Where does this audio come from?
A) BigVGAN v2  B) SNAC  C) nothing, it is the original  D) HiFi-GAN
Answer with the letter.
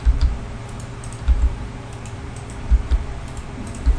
A